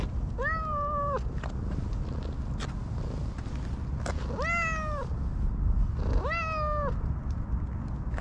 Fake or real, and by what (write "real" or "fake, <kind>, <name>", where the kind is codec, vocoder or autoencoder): real